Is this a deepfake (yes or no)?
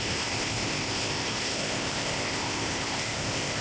yes